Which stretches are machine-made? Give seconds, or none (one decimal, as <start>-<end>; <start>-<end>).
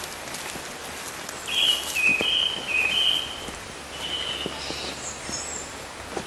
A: none